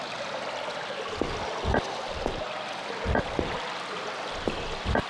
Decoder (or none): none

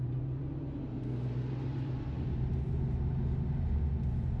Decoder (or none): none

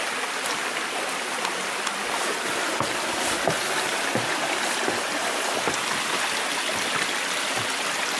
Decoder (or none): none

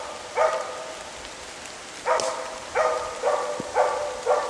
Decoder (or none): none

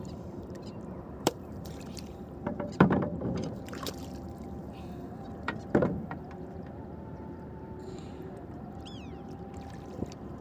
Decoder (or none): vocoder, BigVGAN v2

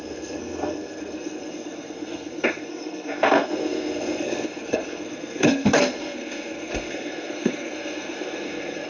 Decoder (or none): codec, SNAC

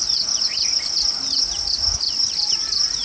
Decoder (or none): none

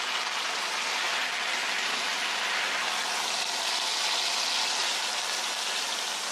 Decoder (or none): none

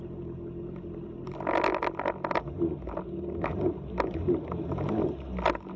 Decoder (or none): none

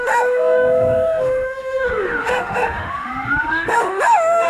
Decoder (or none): autoencoder, DAC-VAE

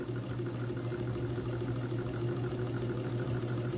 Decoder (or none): none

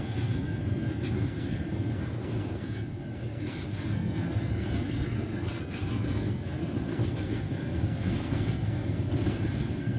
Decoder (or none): codec, SNAC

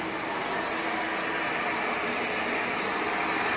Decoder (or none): none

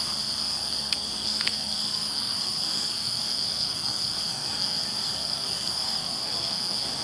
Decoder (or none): codec, SNAC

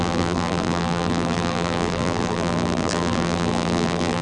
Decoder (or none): vocoder, BigVGAN v2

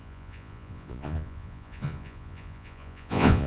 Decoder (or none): vocoder, Vocos